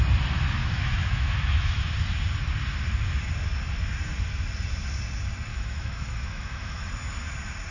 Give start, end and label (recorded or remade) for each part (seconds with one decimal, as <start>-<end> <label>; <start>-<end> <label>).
0.0-0.6 recorded; 0.6-1.9 remade; 1.9-5.5 recorded; 5.5-6.9 remade; 6.9-7.7 recorded